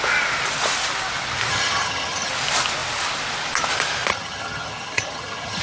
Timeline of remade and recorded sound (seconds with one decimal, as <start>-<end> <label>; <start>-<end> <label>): 0.0-1.5 recorded; 1.5-2.3 remade; 2.3-4.1 recorded; 4.1-5.6 remade